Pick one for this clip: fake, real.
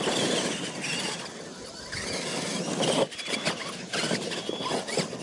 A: real